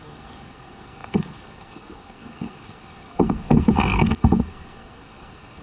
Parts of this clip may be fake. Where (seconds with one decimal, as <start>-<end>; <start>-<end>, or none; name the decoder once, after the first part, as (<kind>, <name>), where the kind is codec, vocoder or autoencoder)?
0.0-5.6 (codec, SNAC)